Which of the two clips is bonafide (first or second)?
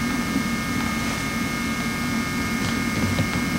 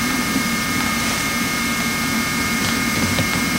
first